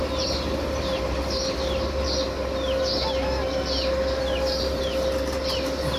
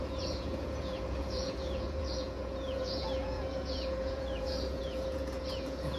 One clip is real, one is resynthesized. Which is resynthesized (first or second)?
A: second